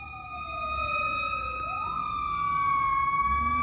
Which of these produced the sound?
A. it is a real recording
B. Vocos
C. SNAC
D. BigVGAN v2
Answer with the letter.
A